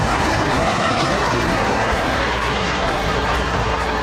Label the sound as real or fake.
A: fake